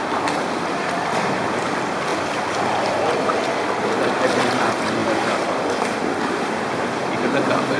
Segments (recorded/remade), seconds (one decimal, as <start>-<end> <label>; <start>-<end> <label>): 0.0-2.1 remade; 2.1-2.6 recorded; 2.6-7.8 remade